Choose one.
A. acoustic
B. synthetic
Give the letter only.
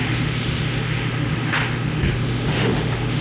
B